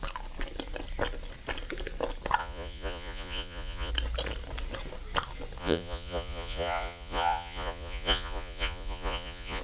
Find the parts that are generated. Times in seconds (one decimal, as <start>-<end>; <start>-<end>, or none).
2.4-3.9; 5.6-9.6